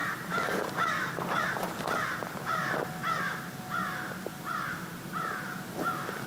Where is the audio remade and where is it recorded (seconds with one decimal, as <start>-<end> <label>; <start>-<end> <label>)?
0.0-2.5 remade; 2.5-4.3 recorded; 4.3-5.7 remade; 5.7-6.3 recorded